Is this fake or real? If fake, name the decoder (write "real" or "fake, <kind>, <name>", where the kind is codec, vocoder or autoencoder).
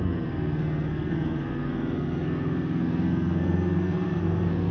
fake, codec, SNAC